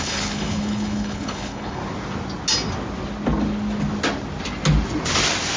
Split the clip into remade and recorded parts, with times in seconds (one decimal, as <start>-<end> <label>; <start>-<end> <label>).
0.0-1.8 remade; 1.8-5.6 recorded